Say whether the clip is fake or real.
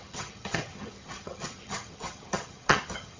fake